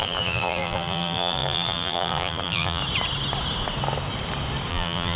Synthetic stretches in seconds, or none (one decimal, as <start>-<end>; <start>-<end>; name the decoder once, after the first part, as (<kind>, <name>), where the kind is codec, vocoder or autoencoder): 0.0-2.8 (vocoder, BigVGAN v2); 4.7-5.2